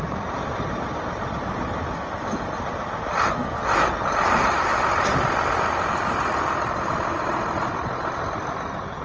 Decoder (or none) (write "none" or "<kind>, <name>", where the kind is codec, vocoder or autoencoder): none